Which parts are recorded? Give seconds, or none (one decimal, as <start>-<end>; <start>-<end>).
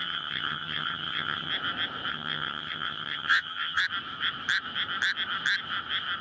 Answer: 1.5-2.1; 3.8-6.2